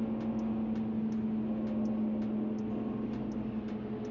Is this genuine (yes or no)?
yes